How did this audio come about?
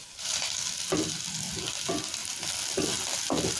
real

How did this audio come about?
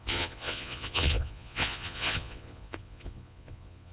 fake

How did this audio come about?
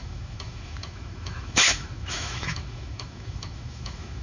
fake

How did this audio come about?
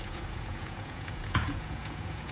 fake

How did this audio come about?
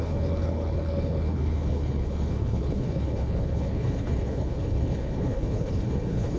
fake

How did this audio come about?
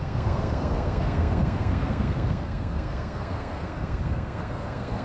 fake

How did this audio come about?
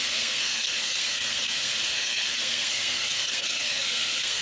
fake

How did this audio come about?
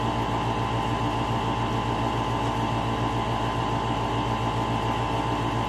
real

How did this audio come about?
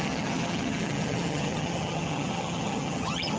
fake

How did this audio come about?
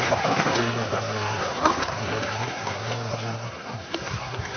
fake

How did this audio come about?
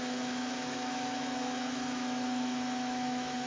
fake